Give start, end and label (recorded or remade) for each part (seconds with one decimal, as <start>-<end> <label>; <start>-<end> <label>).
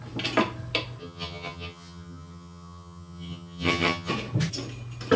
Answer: 0.0-1.0 recorded; 1.0-4.1 remade; 4.1-5.2 recorded